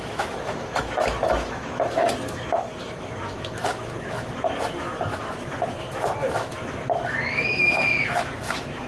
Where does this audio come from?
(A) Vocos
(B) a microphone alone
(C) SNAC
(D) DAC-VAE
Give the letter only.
D